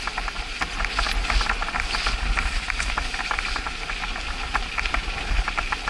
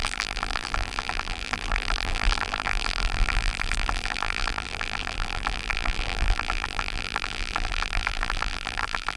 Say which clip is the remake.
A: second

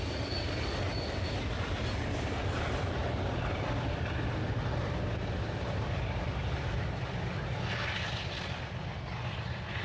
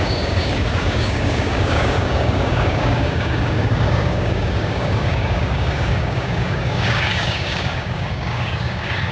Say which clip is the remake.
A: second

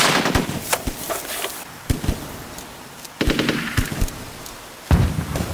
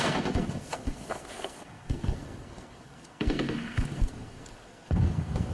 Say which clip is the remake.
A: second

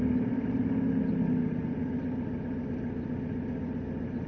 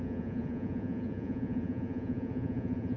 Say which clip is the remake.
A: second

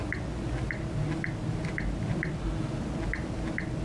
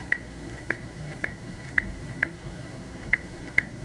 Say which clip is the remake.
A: second